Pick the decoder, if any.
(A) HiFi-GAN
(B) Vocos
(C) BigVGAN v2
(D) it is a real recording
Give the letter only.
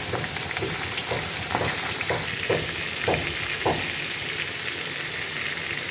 D